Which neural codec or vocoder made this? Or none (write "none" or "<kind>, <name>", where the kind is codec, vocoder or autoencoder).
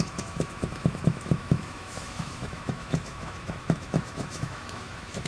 autoencoder, DAC-VAE